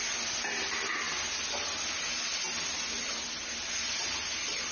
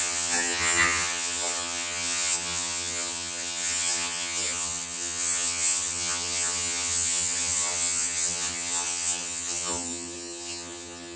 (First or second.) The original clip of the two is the first